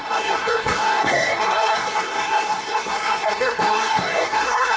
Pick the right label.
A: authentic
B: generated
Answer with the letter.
B